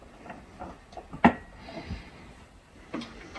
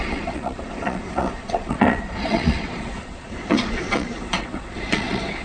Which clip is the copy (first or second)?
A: second